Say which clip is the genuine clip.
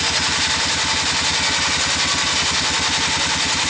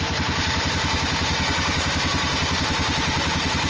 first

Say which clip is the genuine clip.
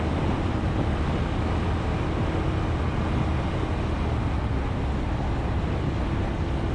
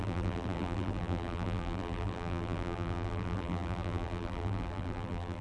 first